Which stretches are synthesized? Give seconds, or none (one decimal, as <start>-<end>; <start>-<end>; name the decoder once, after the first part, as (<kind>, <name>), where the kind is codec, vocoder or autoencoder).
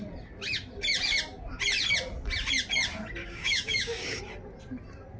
3.2-4.2 (codec, DAC)